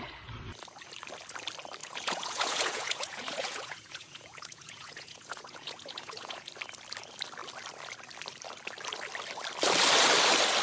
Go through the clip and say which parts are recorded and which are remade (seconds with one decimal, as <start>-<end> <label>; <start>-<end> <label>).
0.0-1.8 recorded; 1.8-6.5 remade; 6.5-10.6 recorded